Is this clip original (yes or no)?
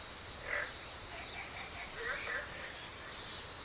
yes